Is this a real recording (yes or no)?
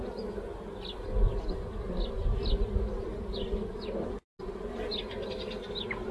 yes